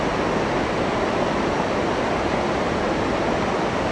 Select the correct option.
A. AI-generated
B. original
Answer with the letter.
B